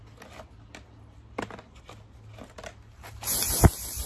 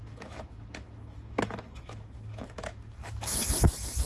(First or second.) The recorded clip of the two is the first